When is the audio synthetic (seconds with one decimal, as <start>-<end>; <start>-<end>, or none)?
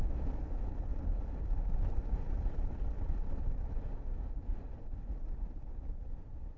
0.9-4.9